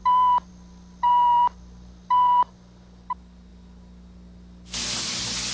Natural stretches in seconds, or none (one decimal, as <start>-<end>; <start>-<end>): 0.0-5.5